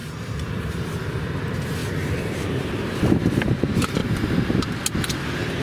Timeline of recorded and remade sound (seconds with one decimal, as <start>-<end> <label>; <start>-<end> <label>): 0.0-4.0 remade; 4.0-5.6 recorded